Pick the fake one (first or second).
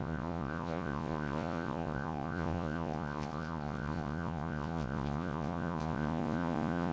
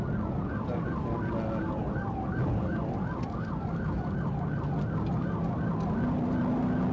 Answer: first